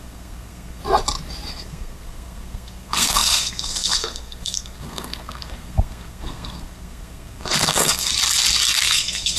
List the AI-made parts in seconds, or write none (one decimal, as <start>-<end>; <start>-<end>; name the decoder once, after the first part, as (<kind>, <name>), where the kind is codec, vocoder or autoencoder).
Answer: 0.0-0.8 (codec, SNAC); 1.5-8.1; 8.8-9.4